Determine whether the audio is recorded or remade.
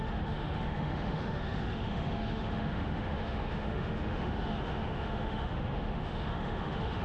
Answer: remade